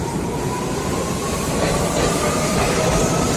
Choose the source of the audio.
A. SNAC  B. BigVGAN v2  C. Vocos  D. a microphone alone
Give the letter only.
B